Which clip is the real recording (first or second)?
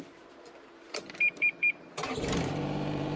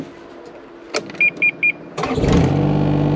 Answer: second